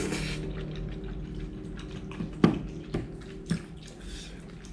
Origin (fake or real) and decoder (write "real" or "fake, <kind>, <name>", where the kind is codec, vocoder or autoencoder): real